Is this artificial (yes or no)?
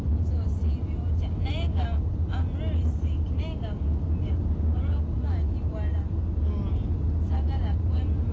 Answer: no